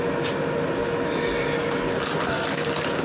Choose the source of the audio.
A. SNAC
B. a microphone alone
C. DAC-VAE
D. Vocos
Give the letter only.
B